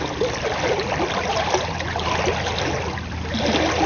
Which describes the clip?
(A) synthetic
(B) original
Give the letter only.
B